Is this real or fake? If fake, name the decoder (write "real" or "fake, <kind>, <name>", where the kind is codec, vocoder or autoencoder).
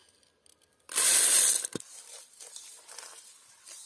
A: real